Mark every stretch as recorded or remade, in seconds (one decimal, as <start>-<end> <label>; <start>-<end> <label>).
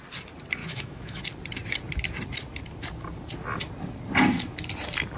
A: 0.0-0.6 recorded; 0.6-1.2 remade; 1.2-5.2 recorded